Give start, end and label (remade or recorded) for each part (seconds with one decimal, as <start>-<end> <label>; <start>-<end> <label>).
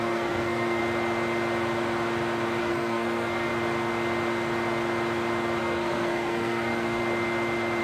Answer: 0.0-0.8 remade; 0.8-2.6 recorded; 2.6-3.5 remade; 3.5-5.6 recorded; 5.6-7.0 remade; 7.0-7.8 recorded